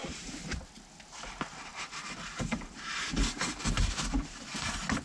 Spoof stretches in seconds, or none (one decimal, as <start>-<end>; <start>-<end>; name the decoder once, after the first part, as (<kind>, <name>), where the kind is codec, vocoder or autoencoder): 0.0-0.6 (vocoder, BigVGAN v2); 1.7-3.6